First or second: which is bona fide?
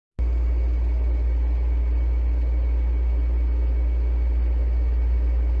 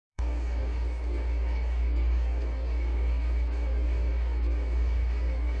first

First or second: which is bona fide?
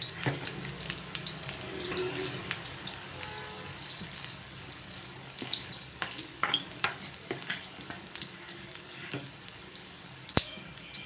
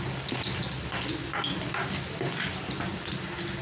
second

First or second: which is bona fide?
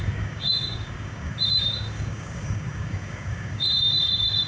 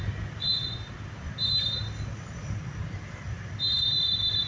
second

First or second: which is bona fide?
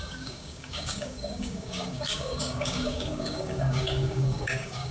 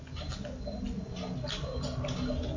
second